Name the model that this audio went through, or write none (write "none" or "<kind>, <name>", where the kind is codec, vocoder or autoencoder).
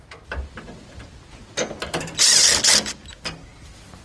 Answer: none